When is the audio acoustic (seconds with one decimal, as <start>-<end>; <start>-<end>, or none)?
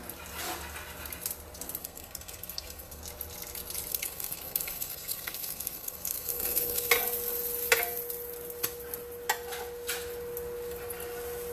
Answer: 0.0-1.8; 3.0-3.9; 6.9-11.5